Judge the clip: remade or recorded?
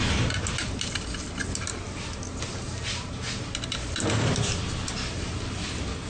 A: recorded